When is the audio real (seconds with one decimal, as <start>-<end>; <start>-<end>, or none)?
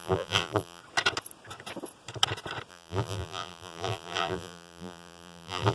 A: 0.8-2.7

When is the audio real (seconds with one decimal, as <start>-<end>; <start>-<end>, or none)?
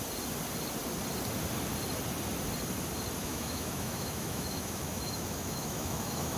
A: 0.0-3.2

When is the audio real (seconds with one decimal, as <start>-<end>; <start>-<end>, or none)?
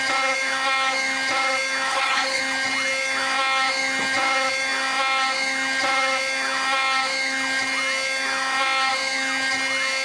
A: 0.0-1.9; 2.4-10.0